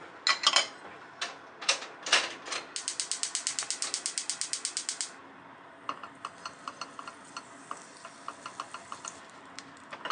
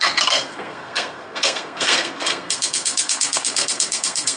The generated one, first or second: second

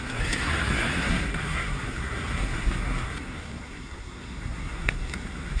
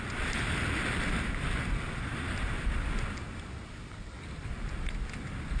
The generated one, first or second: first